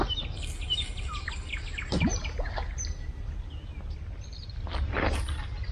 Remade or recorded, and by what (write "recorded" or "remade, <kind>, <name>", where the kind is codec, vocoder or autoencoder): recorded